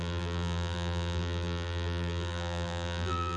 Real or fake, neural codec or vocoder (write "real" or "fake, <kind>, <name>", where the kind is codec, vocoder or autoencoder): fake, vocoder, BigVGAN v2